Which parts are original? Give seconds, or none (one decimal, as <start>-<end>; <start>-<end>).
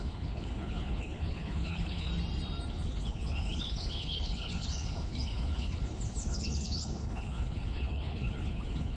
2.1-2.7